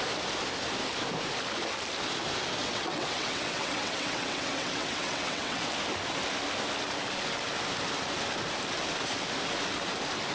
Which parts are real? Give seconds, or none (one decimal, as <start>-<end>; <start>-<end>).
0.0-2.6; 5.7-10.3